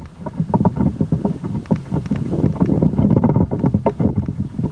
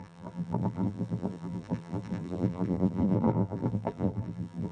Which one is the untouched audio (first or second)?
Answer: first